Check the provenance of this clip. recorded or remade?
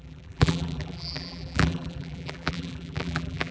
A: remade